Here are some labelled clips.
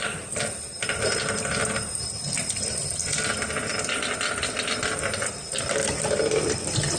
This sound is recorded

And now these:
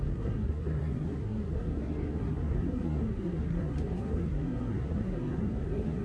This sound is remade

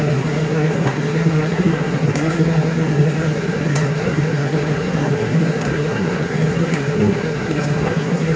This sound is remade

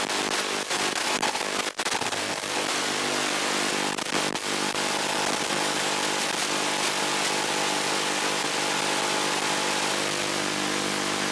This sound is recorded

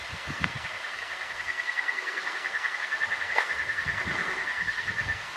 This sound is remade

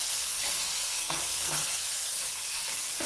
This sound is remade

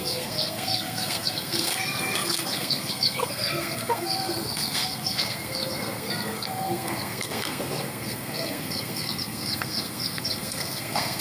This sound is remade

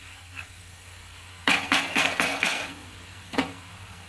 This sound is remade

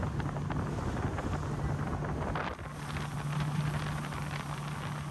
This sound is recorded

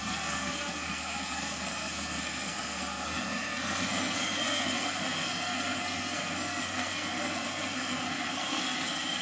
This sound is remade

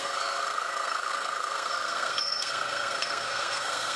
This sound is remade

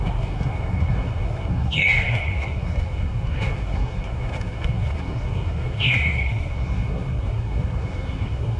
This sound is remade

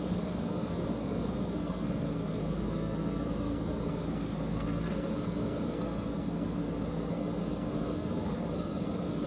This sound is remade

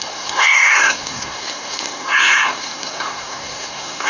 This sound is remade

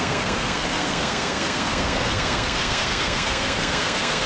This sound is remade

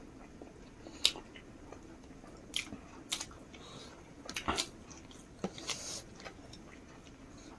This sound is recorded